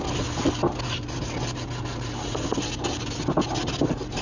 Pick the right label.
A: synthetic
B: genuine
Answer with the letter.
B